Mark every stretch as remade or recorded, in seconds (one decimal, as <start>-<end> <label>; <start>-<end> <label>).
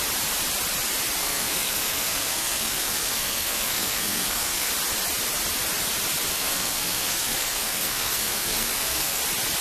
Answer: 0.0-1.2 recorded; 1.2-4.7 remade; 4.7-6.3 recorded; 6.3-9.2 remade; 9.2-9.6 recorded